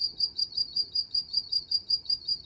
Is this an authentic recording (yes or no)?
no